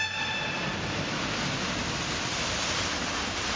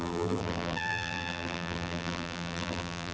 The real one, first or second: first